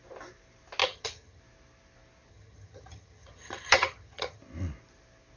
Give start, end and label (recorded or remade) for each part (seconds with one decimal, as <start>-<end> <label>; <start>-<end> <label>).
0.0-0.8 recorded; 0.8-1.4 remade; 1.4-2.3 recorded; 2.3-4.4 remade; 4.4-5.4 recorded